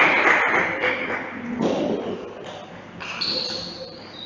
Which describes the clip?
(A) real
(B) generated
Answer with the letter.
A